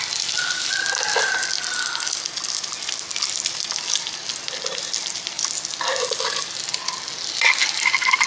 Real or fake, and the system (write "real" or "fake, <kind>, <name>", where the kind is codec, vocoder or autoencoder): real